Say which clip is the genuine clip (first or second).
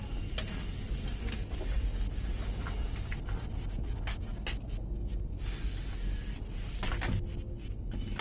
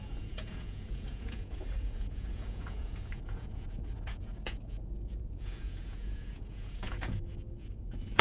first